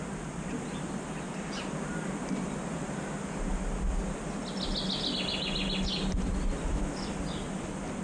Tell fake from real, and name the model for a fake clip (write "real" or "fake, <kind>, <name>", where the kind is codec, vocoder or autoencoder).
real